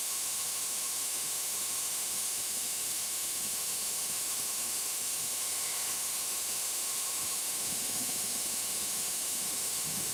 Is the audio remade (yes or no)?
yes